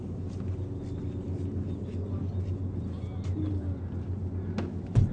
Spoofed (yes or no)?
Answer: no